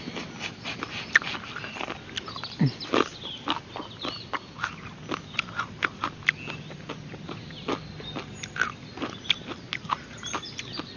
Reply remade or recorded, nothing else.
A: recorded